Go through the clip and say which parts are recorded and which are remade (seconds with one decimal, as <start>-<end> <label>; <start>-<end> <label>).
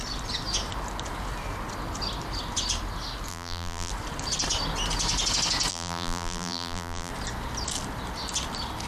0.0-3.3 recorded; 3.3-3.9 remade; 3.9-5.7 recorded; 5.7-7.1 remade; 7.1-8.9 recorded